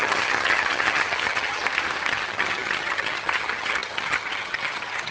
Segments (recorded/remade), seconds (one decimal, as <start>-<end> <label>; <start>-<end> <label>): 0.0-1.6 remade; 1.6-2.1 recorded; 2.1-5.1 remade